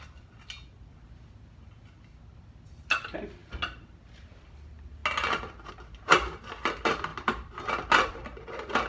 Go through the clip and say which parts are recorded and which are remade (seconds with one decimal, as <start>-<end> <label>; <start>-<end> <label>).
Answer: 0.0-8.9 recorded